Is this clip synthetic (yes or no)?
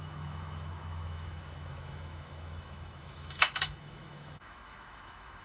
yes